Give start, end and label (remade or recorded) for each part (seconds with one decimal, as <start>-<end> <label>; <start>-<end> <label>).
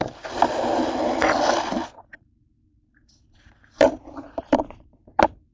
0.0-2.1 recorded; 2.1-4.9 remade; 4.9-5.5 recorded